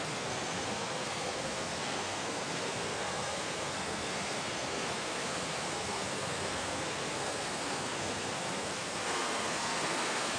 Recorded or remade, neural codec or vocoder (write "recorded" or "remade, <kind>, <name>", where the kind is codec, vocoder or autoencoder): remade, codec, SNAC